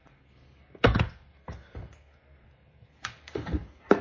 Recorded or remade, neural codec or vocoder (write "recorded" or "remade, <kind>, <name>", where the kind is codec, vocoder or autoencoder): remade, codec, SNAC